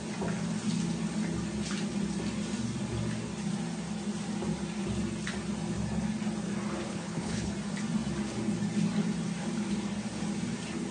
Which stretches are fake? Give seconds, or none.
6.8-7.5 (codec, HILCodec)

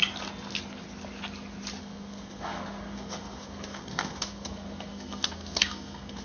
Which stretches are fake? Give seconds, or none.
1.8-6.2 (codec, SNAC)

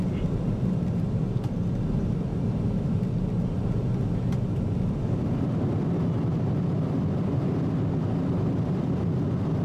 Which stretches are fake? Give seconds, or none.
none

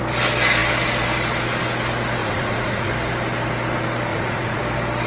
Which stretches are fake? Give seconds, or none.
2.2-2.9 (vocoder, Vocos); 4.1-4.6

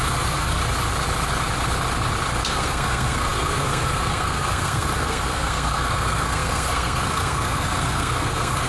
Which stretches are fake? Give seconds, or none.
0.0-0.6 (codec, SNAC); 2.4-8.7

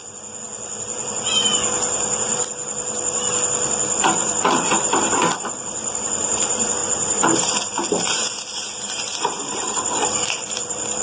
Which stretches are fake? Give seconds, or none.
1.1-1.5 (vocoder, BigVGAN v2); 5.6-11.0

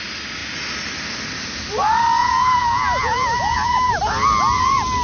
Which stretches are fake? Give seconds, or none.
2.2-3.9 (vocoder, Vocos)